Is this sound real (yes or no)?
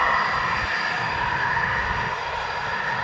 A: yes